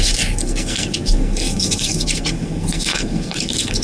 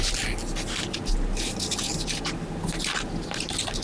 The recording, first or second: second